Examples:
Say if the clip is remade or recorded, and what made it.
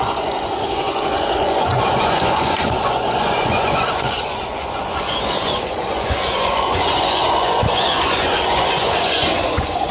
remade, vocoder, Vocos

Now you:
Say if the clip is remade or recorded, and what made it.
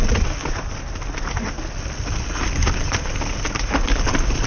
recorded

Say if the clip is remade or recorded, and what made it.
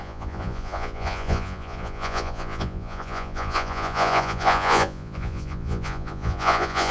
remade, vocoder, Vocos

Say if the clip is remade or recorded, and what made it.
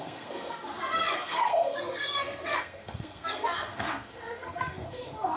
remade, codec, SNAC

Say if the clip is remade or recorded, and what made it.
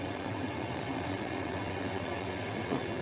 remade, vocoder, WaveNeXt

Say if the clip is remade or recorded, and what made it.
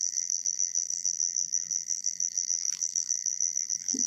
remade, vocoder, BigVGAN v2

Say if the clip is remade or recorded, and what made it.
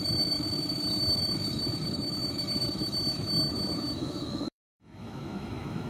remade, autoencoder, DAC-VAE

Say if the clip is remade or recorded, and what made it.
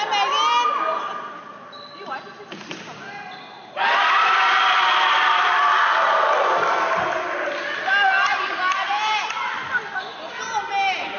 recorded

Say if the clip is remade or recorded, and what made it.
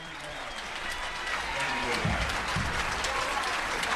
remade, vocoder, BigVGAN v2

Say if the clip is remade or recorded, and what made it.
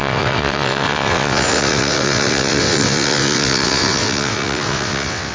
remade, vocoder, WaveNeXt